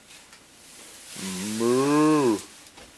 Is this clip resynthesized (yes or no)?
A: no